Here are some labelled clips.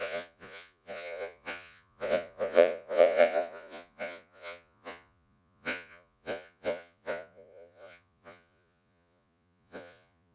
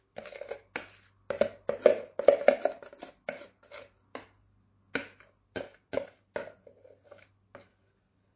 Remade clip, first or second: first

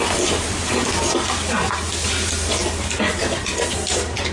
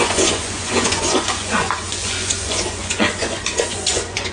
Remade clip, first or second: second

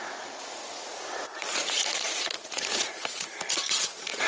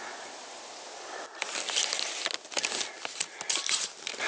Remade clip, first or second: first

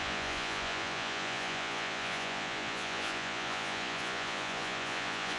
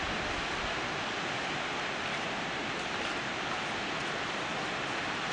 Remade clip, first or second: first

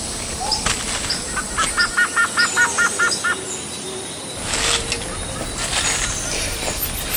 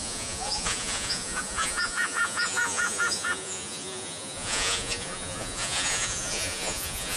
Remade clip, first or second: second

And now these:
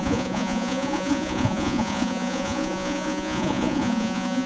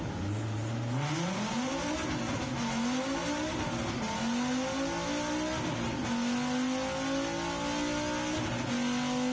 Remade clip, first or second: first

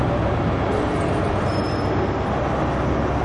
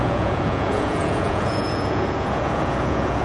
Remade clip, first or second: second